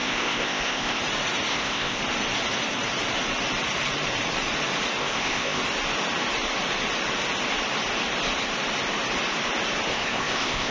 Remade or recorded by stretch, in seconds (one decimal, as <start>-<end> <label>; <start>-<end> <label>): 0.0-1.0 remade; 1.0-1.5 recorded; 1.5-2.0 remade; 2.0-5.0 recorded; 5.0-5.6 remade; 5.6-9.9 recorded; 9.9-10.7 remade